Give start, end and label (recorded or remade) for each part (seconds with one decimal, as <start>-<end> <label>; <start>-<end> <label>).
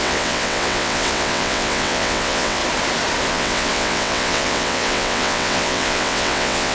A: 0.0-2.6 remade; 2.6-3.3 recorded; 3.3-6.7 remade